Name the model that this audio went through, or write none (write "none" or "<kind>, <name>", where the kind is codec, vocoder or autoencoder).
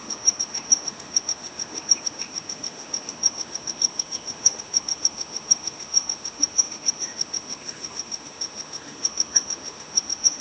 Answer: autoencoder, DAC-VAE